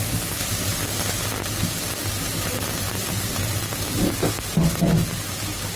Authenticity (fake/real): real